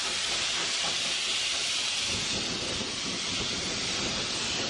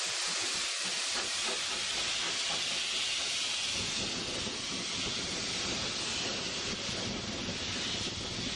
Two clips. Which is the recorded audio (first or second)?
second